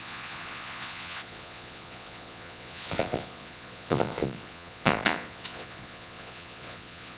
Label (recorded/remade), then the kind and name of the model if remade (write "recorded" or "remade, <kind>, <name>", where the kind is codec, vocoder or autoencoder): remade, vocoder, Vocos